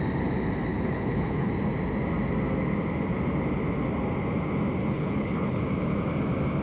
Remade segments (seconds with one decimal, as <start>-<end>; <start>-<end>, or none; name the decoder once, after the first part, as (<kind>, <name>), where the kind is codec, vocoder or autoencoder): 0.7-1.5 (codec, HILCodec); 4.8-5.6